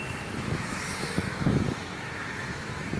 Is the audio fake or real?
fake